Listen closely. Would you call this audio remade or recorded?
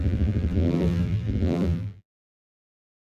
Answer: remade